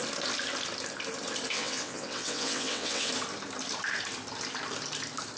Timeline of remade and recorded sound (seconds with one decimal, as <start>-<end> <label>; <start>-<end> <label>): 0.0-1.5 recorded; 1.5-3.1 remade; 3.1-5.4 recorded